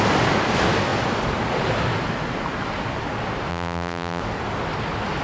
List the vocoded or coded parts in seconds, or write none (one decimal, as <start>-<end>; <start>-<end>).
3.5-4.2